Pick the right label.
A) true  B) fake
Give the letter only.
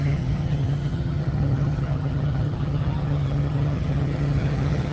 B